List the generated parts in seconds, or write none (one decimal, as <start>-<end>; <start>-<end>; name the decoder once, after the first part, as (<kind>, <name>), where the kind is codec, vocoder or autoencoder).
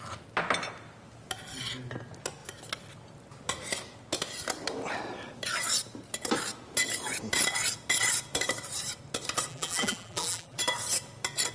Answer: 9.5-10.6 (vocoder, BigVGAN v2)